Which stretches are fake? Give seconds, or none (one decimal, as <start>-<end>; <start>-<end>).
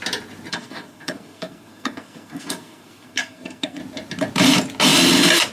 0.5-3.8